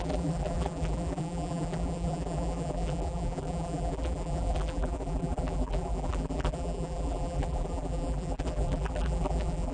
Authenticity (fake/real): fake